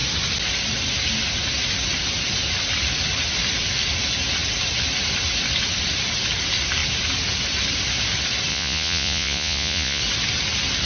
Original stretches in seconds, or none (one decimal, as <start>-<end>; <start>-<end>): 0.0-8.5; 10.0-10.9